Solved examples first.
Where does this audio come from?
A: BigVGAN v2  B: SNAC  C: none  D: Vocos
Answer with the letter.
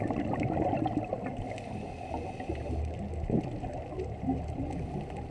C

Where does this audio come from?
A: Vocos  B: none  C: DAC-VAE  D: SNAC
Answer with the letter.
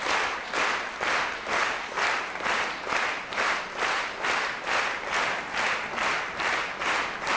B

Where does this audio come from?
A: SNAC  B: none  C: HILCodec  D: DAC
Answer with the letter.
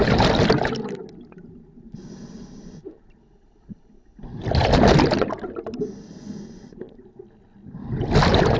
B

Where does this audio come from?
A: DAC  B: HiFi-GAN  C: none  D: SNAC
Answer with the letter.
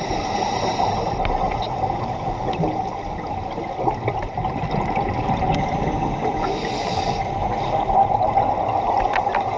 C